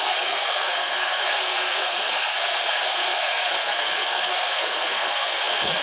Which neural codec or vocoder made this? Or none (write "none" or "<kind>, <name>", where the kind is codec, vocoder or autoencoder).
codec, SNAC